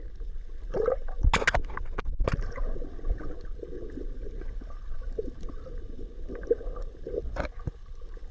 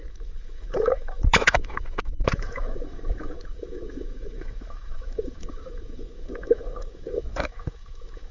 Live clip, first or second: first